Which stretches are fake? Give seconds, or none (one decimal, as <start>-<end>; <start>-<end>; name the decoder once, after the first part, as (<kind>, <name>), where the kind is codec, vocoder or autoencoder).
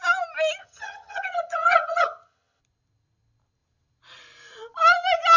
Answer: 0.6-2.6 (vocoder, HiFi-GAN)